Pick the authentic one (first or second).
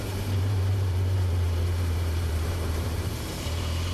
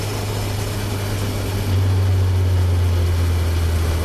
second